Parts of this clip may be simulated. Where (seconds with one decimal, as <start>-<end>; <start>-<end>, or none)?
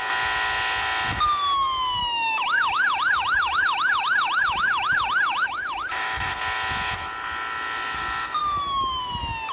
2.0-6.3; 8.4-9.0